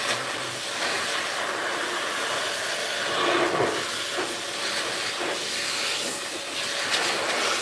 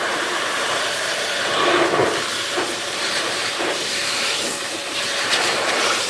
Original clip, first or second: first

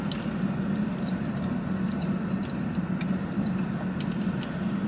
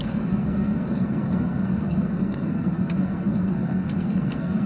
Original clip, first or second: first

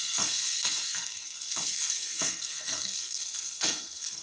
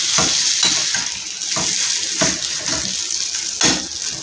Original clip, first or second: second